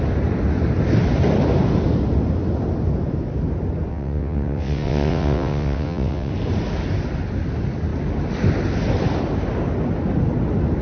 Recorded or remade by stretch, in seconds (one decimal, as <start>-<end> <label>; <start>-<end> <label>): 0.0-3.9 recorded; 3.9-6.3 remade; 6.3-10.8 recorded